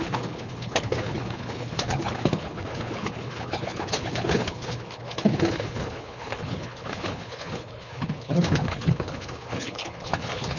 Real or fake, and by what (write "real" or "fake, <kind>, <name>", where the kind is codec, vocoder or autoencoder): fake, codec, HILCodec